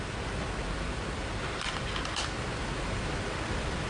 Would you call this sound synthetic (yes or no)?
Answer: yes